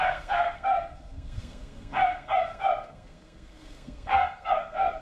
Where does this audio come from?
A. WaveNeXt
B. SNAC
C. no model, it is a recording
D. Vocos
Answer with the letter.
B